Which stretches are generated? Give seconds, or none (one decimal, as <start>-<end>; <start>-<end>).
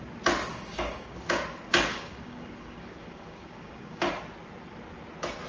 0.5-1.4; 1.9-4.1